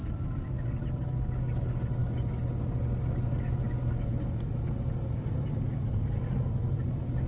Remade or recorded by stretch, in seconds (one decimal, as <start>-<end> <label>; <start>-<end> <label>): 0.0-7.3 recorded